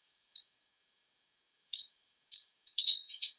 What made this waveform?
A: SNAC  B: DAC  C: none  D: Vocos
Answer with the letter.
B